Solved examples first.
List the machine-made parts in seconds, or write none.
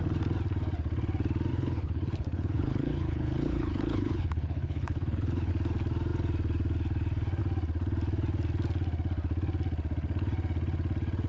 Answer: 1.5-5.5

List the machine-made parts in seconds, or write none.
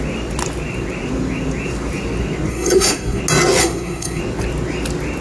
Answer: 2.5-3.2; 3.6-4.2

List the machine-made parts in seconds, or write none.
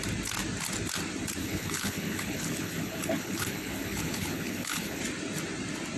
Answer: 1.4-5.0